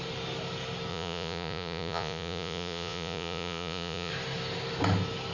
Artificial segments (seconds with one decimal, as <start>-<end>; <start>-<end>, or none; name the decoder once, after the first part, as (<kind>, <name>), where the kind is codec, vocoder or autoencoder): 0.9-4.1 (vocoder, Vocos)